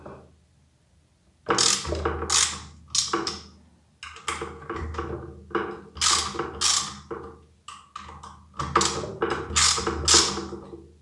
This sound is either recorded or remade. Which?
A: recorded